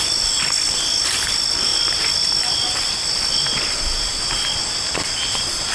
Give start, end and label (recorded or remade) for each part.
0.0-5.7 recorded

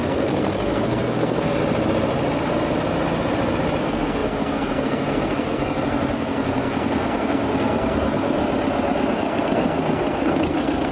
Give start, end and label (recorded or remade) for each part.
0.0-1.6 remade; 1.6-3.8 recorded; 3.8-8.4 remade; 8.4-9.1 recorded; 9.1-10.9 remade